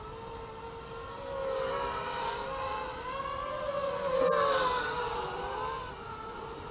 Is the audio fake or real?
real